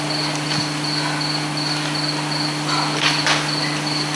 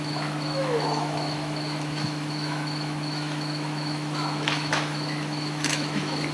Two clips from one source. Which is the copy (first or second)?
second